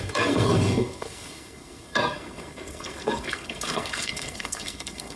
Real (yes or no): no